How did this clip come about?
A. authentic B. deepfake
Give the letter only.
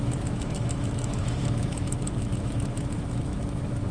B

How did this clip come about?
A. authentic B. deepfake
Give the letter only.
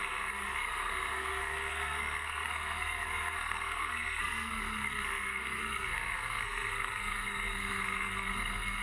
B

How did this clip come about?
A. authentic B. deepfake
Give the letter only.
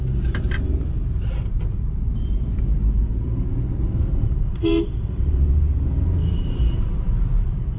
B